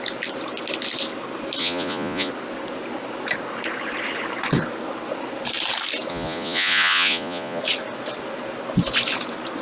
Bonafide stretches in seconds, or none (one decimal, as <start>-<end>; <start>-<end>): 0.0-1.6; 2.3-6.1; 7.6-9.6